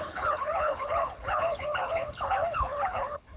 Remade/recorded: remade